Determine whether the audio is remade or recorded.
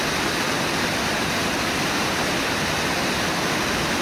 remade